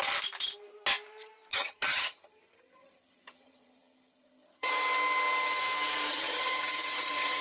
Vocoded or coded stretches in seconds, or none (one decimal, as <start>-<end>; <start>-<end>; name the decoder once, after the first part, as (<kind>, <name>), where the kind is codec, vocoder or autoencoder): 1.5-4.7 (vocoder, HiFi-GAN); 6.1-7.4